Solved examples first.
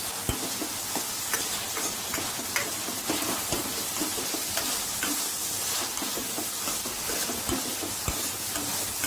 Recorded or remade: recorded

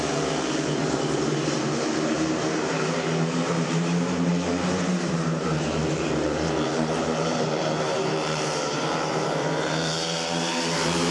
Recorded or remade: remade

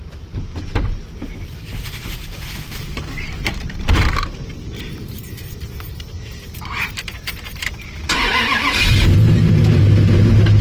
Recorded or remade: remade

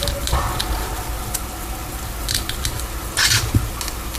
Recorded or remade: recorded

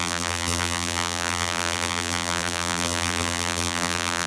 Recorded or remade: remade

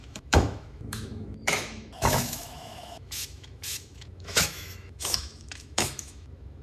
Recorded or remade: remade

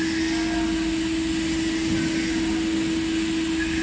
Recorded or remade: recorded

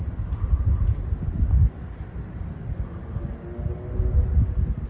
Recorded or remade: recorded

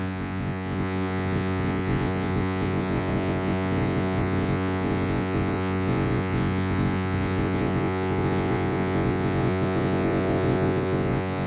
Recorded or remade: remade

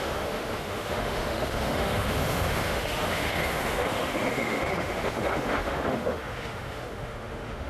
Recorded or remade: remade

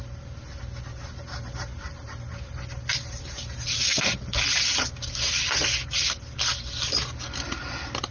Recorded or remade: recorded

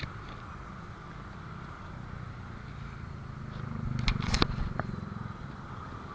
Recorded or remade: recorded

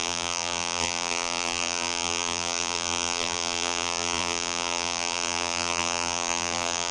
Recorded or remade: remade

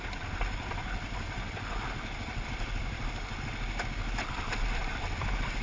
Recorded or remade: recorded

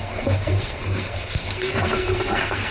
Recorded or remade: remade